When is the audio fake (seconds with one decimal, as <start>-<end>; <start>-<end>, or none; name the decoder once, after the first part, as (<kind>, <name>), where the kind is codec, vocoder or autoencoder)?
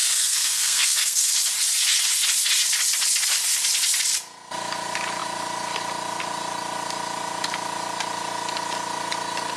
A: 0.0-1.3 (codec, SNAC)